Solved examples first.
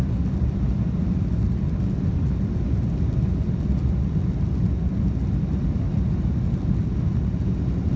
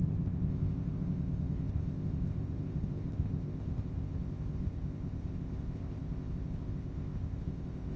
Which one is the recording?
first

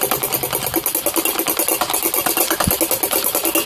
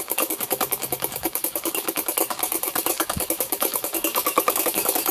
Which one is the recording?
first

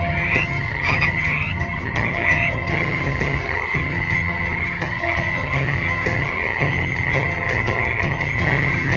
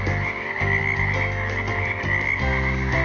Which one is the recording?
second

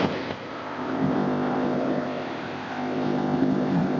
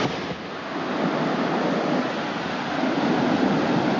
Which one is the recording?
second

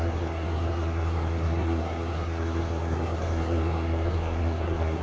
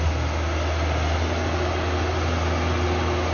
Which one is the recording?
second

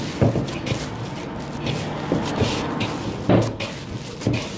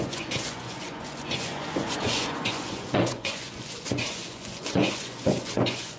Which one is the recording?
first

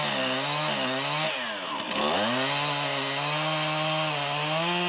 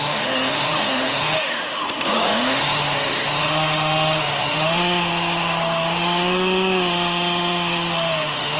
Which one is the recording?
first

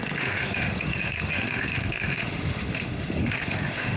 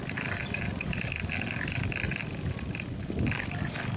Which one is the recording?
second